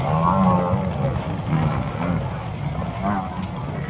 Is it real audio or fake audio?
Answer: real